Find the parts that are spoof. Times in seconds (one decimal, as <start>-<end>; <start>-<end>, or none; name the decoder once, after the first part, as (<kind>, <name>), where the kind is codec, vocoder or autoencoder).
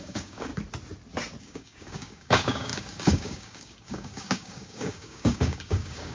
0.0-0.5 (codec, DAC); 1.4-6.1